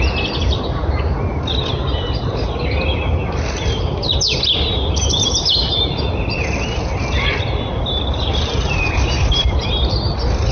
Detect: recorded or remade recorded